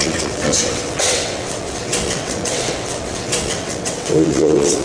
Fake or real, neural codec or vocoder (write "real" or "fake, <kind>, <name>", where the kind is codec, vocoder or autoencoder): fake, vocoder, WaveNeXt